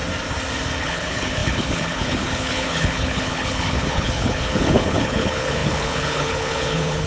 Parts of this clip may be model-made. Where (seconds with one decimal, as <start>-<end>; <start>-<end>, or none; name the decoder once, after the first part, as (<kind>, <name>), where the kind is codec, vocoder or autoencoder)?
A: 0.8-7.1 (codec, HILCodec)